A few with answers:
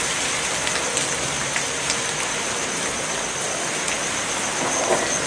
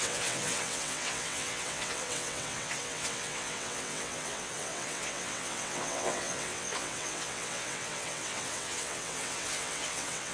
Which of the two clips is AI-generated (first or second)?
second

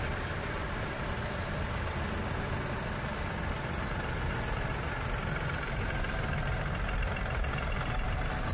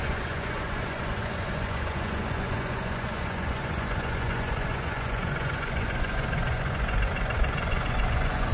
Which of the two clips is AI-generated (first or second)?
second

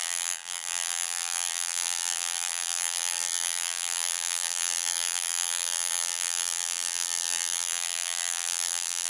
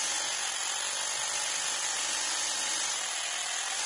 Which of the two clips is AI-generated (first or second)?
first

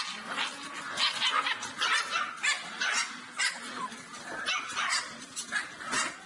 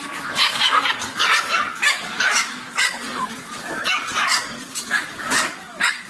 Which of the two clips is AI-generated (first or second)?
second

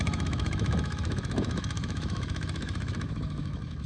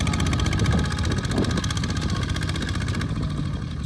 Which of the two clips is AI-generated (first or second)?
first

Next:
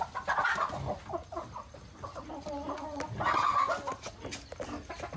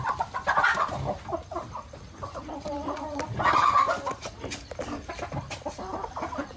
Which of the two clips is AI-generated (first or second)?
second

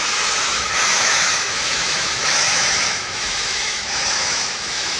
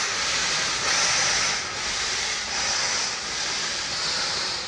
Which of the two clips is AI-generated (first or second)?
first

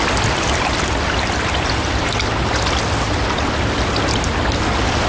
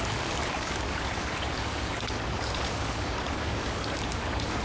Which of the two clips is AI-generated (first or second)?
second